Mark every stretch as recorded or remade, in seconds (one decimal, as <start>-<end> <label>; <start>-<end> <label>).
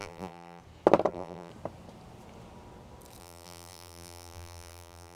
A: 0.0-0.6 remade; 0.6-1.1 recorded; 1.1-1.5 remade; 1.5-3.2 recorded; 3.2-5.2 remade